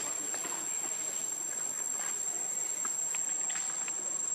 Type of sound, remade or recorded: recorded